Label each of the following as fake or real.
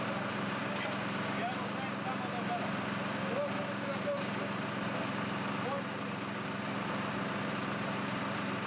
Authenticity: real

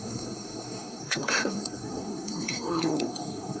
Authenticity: fake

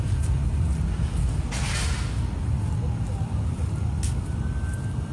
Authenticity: real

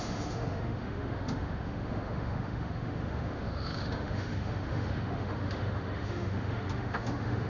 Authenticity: fake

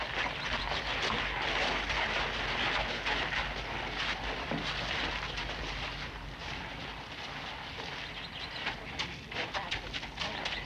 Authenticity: real